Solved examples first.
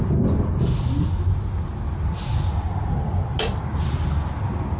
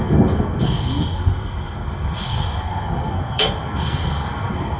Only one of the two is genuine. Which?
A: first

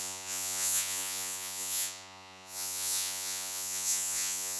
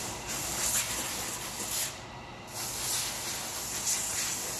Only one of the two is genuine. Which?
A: second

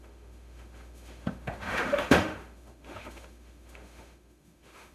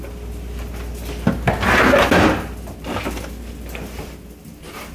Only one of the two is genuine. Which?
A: second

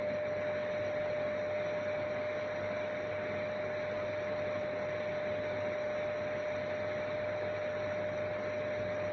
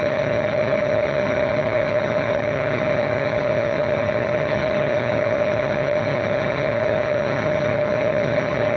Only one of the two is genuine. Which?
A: first